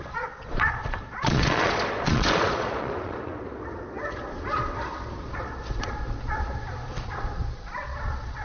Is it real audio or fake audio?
fake